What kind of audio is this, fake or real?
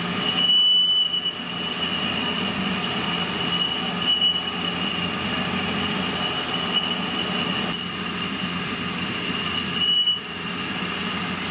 real